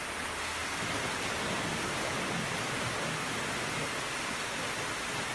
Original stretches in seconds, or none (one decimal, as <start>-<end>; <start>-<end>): 0.0-5.3